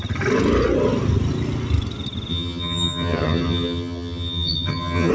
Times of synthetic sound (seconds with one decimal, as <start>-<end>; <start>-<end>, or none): 2.3-5.1